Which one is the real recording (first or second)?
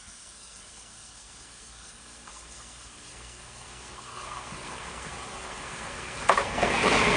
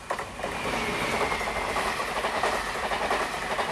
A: second